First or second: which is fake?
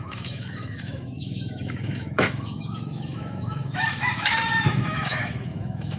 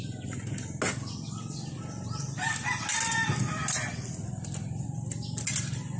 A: first